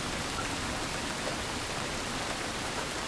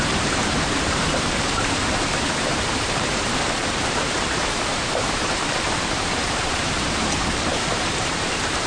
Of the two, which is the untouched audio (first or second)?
first